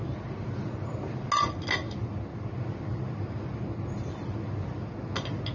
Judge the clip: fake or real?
real